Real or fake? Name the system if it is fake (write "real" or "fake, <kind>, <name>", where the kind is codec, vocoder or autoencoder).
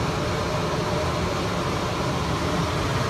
real